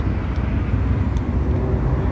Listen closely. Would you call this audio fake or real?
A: real